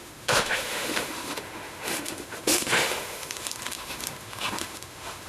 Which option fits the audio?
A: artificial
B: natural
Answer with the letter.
A